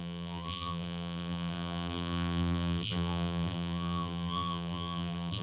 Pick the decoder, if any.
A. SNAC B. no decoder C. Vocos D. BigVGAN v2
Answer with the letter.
D